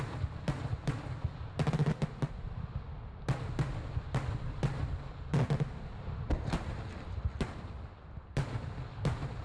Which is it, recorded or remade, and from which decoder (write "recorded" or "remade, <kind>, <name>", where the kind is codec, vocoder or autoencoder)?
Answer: recorded